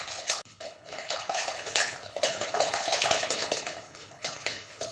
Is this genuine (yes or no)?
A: no